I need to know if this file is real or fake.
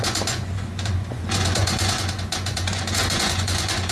fake